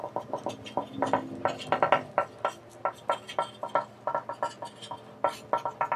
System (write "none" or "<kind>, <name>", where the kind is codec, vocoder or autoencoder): none